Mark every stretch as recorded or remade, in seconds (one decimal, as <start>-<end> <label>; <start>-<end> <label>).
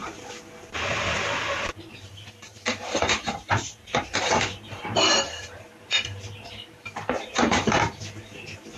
0.0-1.6 recorded; 1.6-8.8 remade